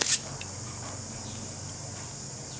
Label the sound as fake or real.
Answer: real